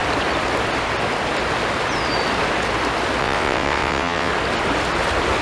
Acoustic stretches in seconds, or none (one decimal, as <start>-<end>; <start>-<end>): 0.0-3.2; 4.3-5.4